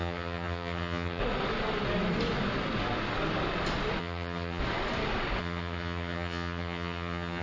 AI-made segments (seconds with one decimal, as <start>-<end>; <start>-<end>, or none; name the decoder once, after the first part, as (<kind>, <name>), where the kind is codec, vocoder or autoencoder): 0.0-1.2 (vocoder, HiFi-GAN); 4.0-4.6; 5.4-7.4